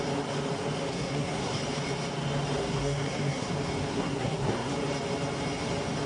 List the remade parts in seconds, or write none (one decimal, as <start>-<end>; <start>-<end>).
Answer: 0.9-1.6; 2.6-3.5; 3.9-4.7